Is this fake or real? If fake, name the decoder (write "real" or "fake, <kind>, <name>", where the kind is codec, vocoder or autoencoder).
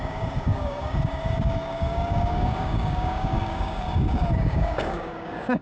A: fake, codec, DAC